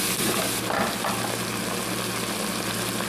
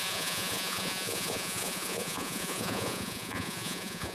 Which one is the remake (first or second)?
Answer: second